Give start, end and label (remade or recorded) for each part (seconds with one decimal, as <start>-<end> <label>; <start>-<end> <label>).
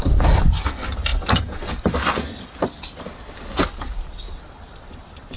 0.0-5.4 recorded